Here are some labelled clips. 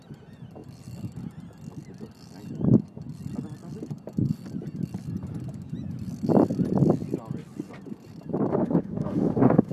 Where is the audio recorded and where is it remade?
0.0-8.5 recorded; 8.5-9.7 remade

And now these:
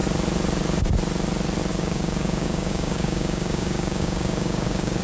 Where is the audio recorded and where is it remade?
0.0-1.7 recorded; 1.7-5.0 remade

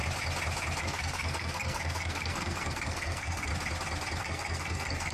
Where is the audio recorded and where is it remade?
0.0-0.8 recorded; 0.8-3.5 remade; 3.5-4.2 recorded; 4.2-5.1 remade

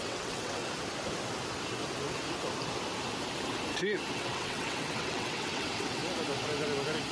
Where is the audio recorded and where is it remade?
0.0-0.6 remade; 0.6-4.1 recorded; 4.1-6.0 remade; 6.0-7.1 recorded